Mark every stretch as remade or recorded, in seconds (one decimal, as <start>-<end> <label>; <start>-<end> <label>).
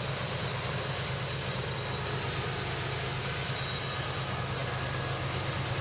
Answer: 0.0-5.8 recorded